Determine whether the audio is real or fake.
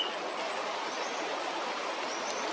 real